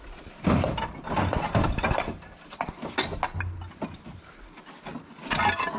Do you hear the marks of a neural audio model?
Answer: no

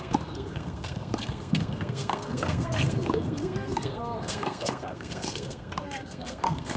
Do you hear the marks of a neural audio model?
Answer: yes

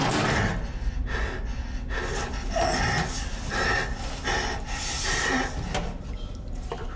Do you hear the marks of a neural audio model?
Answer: no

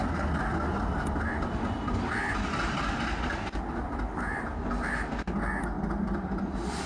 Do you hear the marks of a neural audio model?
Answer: no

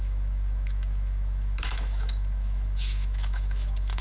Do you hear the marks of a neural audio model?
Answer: yes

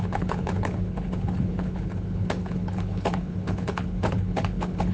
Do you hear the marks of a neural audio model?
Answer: yes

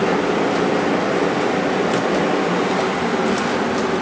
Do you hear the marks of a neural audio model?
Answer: no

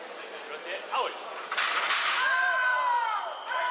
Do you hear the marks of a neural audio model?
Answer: no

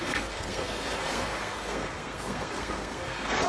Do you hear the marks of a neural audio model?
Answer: yes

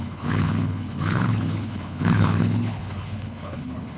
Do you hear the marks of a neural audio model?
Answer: yes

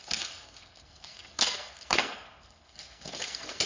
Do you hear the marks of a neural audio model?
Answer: yes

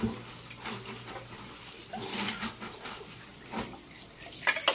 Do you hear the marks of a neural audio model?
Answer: no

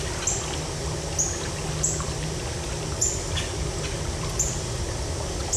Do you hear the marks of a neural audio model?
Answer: no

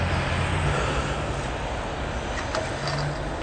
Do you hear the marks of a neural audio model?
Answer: no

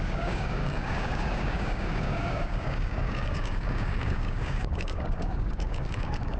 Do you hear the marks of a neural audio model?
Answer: yes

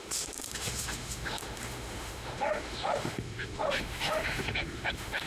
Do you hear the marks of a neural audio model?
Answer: yes